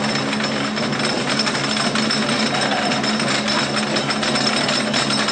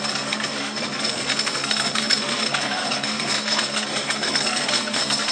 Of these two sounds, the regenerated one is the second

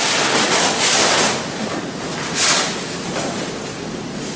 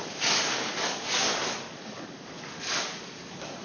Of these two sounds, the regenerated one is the second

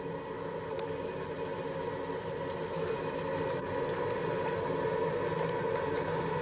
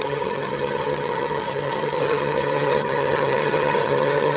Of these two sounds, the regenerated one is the second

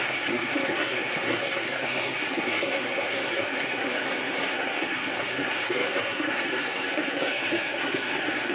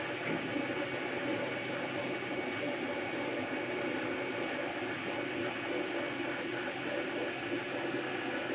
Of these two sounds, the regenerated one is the first